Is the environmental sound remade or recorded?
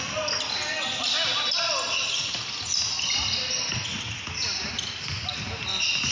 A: recorded